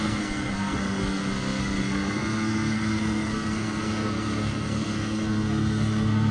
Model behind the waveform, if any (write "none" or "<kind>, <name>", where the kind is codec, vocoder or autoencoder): codec, SNAC